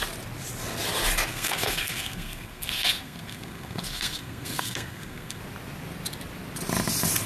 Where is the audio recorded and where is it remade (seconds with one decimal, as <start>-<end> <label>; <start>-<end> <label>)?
0.0-1.3 recorded; 1.3-5.4 remade; 5.4-7.3 recorded

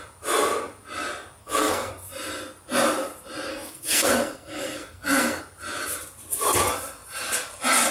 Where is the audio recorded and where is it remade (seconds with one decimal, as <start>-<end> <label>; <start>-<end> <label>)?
0.0-1.4 recorded; 1.4-1.9 remade; 1.9-3.5 recorded; 3.5-5.4 remade; 5.4-7.9 recorded

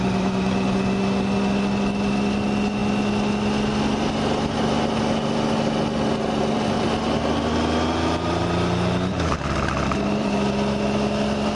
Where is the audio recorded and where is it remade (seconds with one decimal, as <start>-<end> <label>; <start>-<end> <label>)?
0.0-11.5 recorded

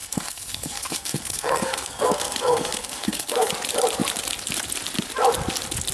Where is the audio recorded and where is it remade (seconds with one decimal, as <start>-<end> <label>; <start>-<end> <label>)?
0.0-3.5 remade; 3.5-5.9 recorded

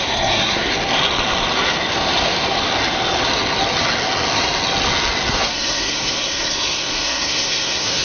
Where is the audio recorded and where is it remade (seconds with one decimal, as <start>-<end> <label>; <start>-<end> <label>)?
0.0-0.7 remade; 0.7-5.3 recorded; 5.3-8.0 remade